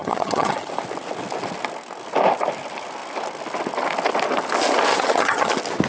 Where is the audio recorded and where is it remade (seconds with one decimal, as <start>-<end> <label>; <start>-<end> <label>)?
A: 0.0-0.7 remade; 0.7-4.9 recorded; 4.9-5.5 remade; 5.5-5.9 recorded